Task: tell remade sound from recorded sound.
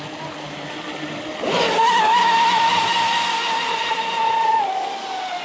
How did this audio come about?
recorded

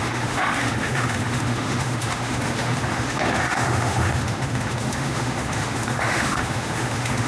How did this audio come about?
remade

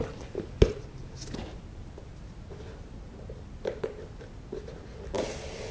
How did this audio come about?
recorded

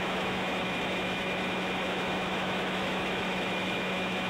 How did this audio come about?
remade